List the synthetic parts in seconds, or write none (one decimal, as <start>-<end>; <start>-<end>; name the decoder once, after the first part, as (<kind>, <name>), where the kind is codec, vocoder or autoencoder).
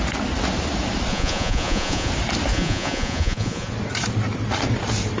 1.1-2.1 (vocoder, Vocos); 2.5-3.7